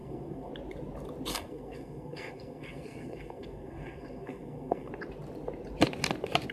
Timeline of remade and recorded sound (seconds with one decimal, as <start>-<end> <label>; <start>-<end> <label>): 0.0-0.5 remade; 0.5-1.3 recorded; 1.3-4.9 remade; 4.9-6.5 recorded